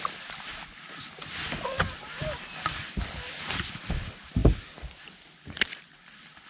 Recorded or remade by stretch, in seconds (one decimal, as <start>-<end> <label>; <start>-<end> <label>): 0.0-6.5 recorded